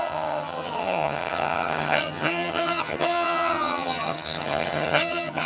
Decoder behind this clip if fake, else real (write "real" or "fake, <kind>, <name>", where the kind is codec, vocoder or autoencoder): fake, vocoder, HiFi-GAN